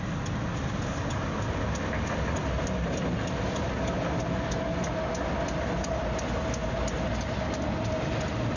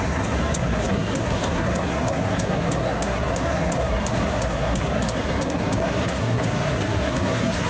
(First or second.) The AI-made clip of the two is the second